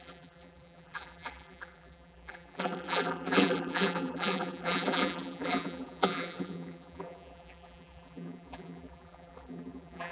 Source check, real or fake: fake